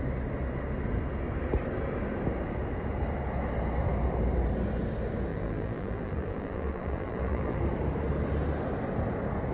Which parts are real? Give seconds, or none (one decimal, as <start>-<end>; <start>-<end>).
0.0-5.3; 7.6-9.5